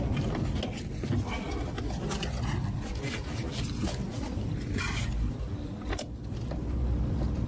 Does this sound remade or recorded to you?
recorded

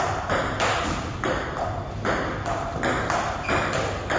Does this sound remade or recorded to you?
recorded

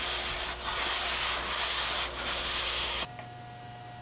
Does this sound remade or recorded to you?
recorded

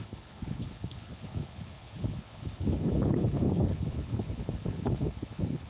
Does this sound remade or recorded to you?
remade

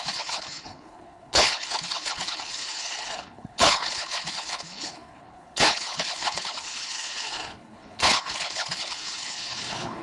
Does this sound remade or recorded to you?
remade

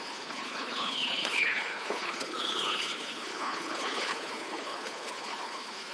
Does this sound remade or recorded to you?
remade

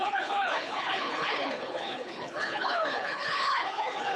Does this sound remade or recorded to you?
remade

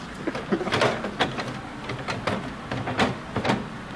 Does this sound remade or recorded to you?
recorded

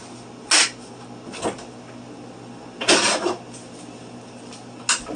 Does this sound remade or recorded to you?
recorded